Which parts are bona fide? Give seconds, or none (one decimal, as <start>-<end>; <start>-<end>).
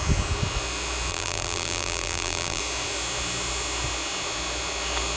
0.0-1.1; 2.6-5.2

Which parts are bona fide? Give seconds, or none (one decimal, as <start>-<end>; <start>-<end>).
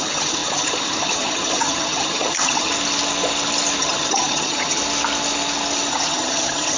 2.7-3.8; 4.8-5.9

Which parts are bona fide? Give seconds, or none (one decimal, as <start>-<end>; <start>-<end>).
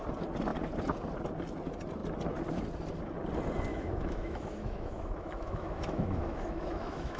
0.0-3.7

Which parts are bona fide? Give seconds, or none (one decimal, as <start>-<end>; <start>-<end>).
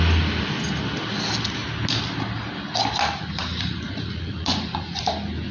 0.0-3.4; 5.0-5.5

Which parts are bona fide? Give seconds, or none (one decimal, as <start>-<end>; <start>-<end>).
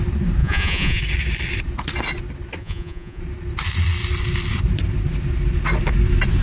0.0-0.4; 1.0-2.6; 3.2-6.4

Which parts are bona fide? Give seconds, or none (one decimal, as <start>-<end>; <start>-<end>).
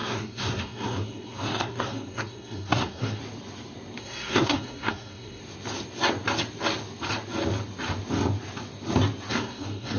3.2-4.0; 5.4-9.3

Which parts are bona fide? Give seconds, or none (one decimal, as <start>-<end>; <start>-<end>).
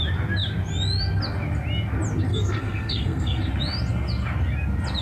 0.0-2.3; 3.4-5.0